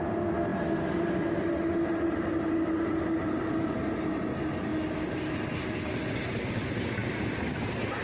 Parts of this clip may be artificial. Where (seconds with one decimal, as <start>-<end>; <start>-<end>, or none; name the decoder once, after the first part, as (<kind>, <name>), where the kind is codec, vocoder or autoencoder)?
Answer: none